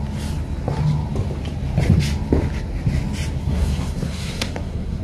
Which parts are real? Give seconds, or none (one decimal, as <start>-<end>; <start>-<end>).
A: 0.0-3.4